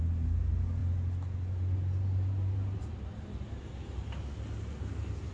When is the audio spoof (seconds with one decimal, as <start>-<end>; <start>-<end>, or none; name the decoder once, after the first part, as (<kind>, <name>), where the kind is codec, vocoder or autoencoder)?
none